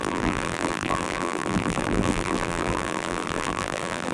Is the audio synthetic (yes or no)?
yes